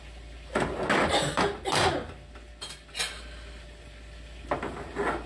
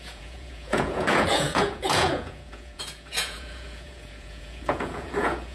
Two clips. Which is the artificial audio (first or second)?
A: second